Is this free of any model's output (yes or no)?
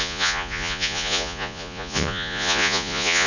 no